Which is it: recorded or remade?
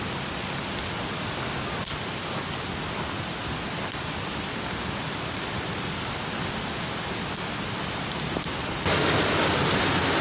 recorded